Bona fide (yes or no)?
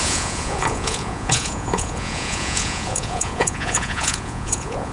no